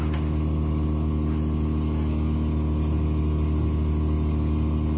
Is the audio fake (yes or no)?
no